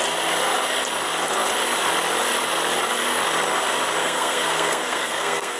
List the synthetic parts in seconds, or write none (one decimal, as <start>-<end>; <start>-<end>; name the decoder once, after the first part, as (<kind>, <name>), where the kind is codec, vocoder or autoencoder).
4.0-5.6 (codec, SNAC)